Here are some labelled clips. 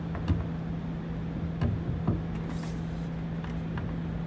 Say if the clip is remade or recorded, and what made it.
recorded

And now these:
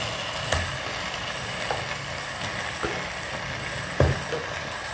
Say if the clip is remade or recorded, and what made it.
recorded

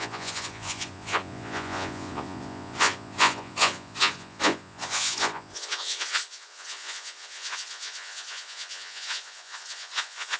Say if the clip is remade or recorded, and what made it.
remade, vocoder, Vocos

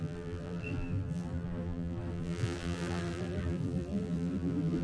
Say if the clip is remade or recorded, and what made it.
remade, vocoder, BigVGAN v2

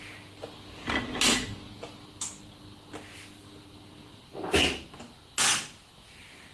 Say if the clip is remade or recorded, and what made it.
recorded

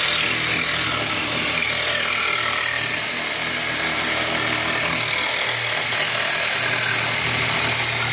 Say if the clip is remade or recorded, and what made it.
recorded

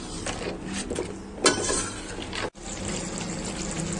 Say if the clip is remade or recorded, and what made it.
recorded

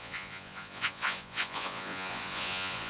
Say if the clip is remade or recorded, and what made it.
remade, vocoder, Vocos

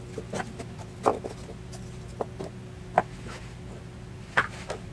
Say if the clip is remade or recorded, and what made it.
recorded